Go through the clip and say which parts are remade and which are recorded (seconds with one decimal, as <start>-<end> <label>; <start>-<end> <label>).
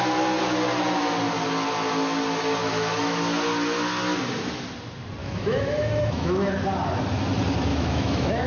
0.0-2.6 recorded; 2.6-3.2 remade; 3.2-5.2 recorded; 5.2-6.5 remade; 6.5-7.7 recorded; 7.7-8.5 remade